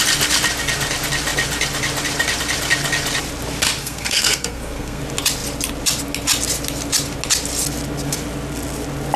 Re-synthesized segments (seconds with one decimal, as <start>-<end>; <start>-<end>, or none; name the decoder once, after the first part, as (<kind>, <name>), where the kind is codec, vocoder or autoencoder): 3.8-5.0 (codec, SNAC)